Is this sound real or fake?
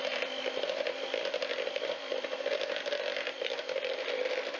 fake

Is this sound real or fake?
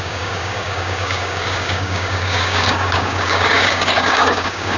fake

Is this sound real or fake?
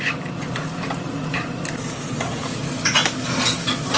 real